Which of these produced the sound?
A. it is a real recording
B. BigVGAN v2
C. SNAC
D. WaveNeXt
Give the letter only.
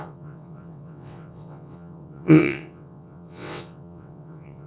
D